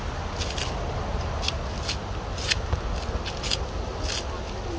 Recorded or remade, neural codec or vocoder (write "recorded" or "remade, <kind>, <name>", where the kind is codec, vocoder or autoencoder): recorded